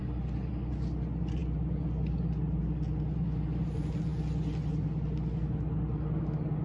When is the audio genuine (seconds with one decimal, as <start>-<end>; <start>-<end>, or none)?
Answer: 0.0-6.6